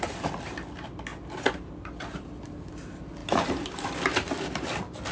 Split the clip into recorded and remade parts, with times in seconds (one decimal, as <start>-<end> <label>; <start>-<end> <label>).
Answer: 0.0-5.1 recorded